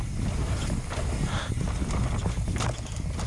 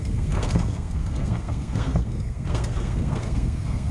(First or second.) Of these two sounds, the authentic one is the first